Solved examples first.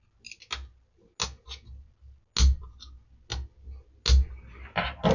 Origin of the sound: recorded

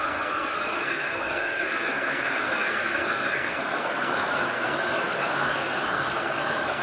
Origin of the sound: remade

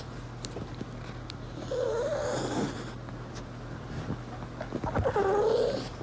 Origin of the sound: recorded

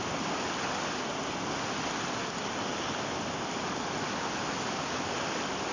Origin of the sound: recorded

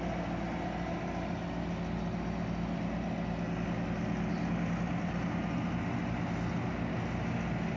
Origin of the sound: recorded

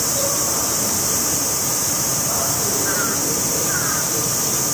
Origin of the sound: remade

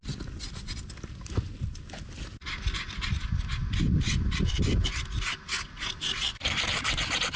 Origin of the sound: recorded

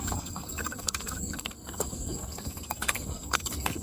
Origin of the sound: remade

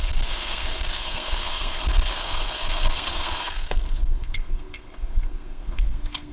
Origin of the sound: remade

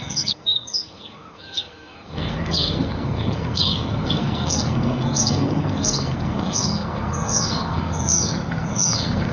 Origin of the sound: remade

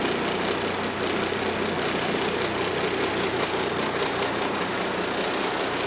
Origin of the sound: recorded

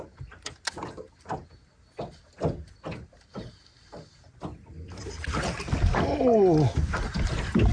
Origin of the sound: recorded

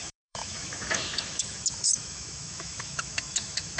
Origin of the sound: remade